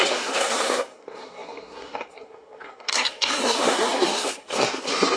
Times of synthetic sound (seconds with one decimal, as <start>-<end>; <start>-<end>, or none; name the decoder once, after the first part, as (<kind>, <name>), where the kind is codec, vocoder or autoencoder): 0.0-5.2 (codec, SNAC)